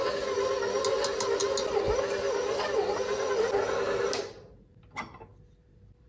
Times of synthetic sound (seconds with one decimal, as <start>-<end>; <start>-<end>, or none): none